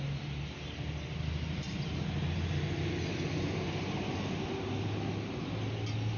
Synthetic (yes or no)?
no